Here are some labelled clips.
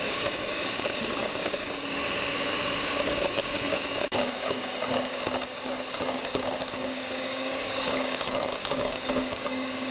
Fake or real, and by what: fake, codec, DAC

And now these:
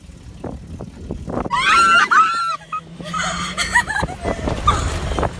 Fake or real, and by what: real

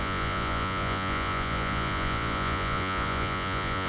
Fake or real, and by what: fake, vocoder, Vocos